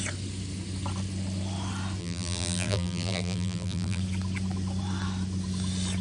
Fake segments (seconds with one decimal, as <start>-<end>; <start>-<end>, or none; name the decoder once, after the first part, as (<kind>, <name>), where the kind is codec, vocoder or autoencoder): 2.0-4.0 (vocoder, BigVGAN v2)